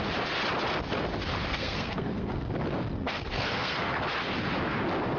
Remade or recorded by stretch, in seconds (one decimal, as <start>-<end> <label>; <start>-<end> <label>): 0.0-1.5 recorded; 1.5-2.5 remade; 2.5-2.9 recorded; 2.9-3.9 remade; 3.9-5.2 recorded